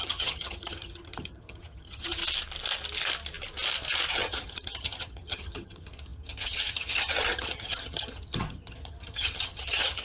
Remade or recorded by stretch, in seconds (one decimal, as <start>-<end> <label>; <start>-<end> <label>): 0.0-2.2 remade; 2.2-4.1 recorded; 4.1-10.0 remade